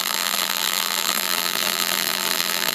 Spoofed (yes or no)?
yes